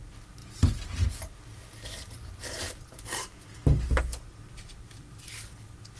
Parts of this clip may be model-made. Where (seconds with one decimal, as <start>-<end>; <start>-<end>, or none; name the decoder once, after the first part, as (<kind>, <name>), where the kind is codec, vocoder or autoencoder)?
none